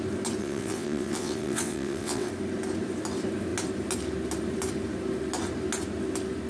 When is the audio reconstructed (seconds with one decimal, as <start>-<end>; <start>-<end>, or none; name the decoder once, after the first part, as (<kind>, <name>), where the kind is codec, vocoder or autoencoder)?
0.4-2.3 (vocoder, WaveNeXt)